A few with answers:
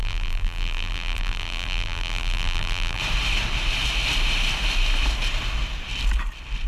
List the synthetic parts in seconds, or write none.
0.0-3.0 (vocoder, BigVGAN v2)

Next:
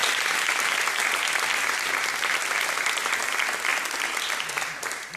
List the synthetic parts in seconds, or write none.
none

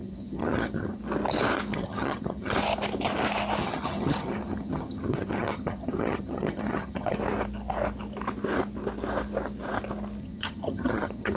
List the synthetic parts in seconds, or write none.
0.0-1.0 (vocoder, HiFi-GAN); 1.7-2.5; 3.6-7.2; 10.2-11.4

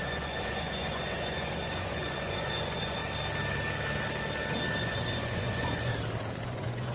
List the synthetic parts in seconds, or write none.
0.0-3.0 (vocoder, Vocos); 4.8-5.9; 6.4-6.9

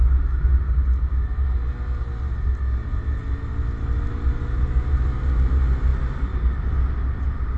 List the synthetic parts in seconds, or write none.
none

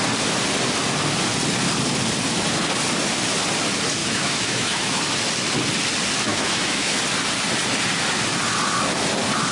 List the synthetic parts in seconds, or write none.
4.0-5.0 (autoencoder, DAC-VAE); 6.3-7.0